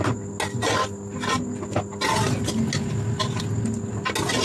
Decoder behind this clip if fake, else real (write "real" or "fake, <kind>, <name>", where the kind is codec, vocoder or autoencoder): real